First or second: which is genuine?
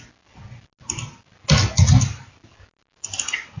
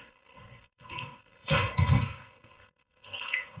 first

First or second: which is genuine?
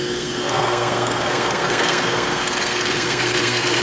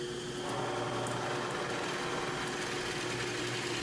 second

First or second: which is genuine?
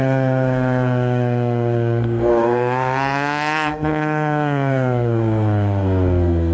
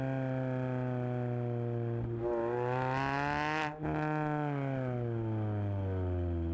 second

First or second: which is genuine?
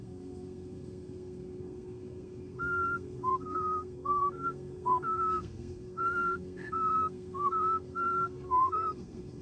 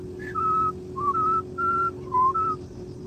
second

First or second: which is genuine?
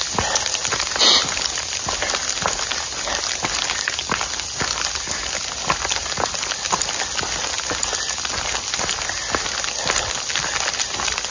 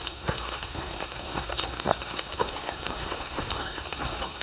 first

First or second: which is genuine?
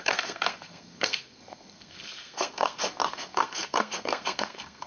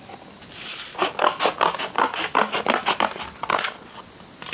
second